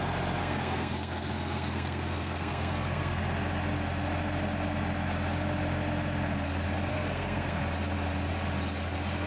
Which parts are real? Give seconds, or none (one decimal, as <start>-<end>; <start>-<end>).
0.0-0.4; 3.2-6.9; 7.6-9.3